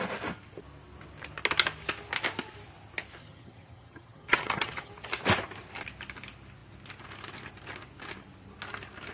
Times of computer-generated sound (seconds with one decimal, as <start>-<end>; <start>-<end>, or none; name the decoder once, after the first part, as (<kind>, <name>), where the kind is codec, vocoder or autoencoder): 3.2-4.9 (vocoder, HiFi-GAN)